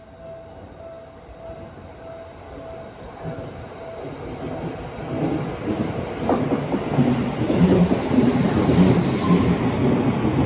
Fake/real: real